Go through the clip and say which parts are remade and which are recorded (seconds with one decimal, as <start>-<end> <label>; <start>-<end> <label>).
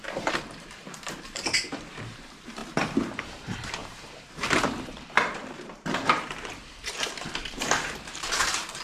0.0-2.6 remade; 2.6-3.2 recorded; 3.2-8.8 remade